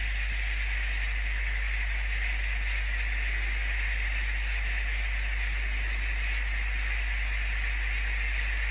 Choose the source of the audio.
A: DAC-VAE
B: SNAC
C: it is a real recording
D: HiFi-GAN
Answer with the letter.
C